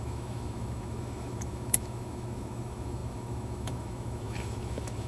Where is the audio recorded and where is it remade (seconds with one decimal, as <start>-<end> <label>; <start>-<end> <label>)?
0.0-5.1 remade